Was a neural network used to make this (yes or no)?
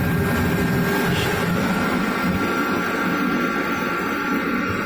no